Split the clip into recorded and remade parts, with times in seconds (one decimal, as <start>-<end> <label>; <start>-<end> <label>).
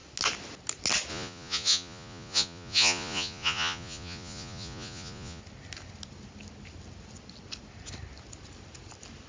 0.0-1.1 recorded; 1.1-5.4 remade; 5.4-9.3 recorded